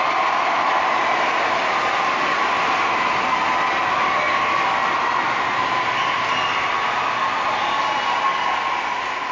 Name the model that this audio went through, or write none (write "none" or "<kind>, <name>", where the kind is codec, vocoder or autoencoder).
none